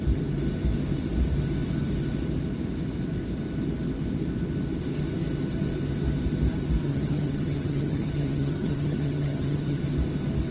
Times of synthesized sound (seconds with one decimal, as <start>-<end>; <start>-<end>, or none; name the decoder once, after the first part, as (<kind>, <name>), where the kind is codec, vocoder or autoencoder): 6.8-9.8 (vocoder, HiFi-GAN)